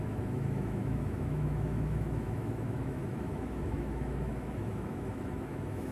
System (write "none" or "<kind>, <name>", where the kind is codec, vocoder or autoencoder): autoencoder, DAC-VAE